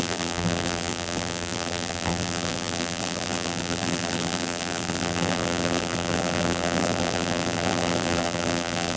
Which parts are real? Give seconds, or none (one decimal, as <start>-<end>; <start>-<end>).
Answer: none

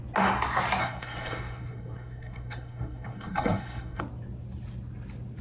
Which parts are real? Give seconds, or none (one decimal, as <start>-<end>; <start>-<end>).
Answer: 0.0-0.8; 4.0-5.4

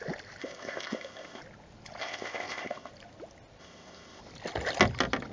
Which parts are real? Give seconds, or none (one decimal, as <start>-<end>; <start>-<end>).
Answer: 0.0-0.4; 1.4-2.0; 2.9-3.6; 4.2-5.3

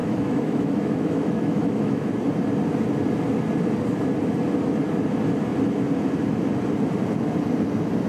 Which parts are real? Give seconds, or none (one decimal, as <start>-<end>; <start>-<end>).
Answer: 2.1-8.1

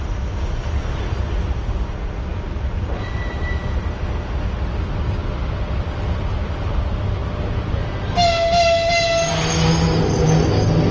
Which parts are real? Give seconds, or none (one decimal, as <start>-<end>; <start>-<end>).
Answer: 0.0-10.9

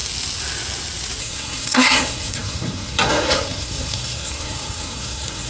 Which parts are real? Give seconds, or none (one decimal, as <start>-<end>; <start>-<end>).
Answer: 0.0-1.2